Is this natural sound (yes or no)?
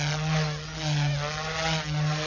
yes